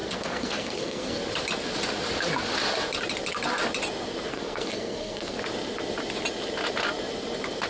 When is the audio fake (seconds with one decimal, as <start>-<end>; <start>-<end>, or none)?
0.0-1.2; 4.3-5.4